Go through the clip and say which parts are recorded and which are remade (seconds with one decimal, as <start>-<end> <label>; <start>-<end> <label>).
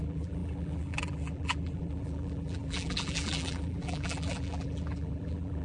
0.0-5.6 remade